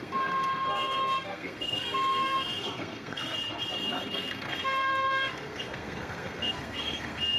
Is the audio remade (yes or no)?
yes